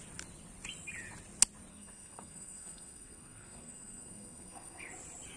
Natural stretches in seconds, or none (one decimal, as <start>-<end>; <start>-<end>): 0.0-1.7; 4.9-5.4